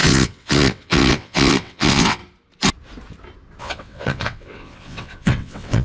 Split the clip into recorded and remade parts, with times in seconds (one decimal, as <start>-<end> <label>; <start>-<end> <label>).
0.0-2.2 remade; 2.2-3.6 recorded; 3.6-5.8 remade